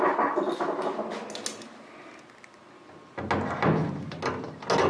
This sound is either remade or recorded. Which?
recorded